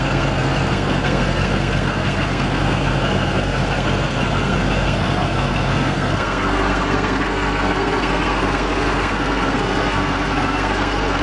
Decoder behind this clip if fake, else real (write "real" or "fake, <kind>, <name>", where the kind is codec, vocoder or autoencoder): fake, codec, SNAC